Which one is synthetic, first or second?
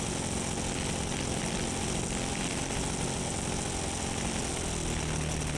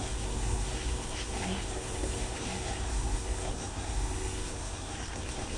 second